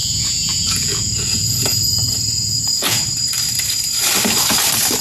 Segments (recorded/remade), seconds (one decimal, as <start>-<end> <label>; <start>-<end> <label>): 0.0-3.0 remade; 3.0-5.0 recorded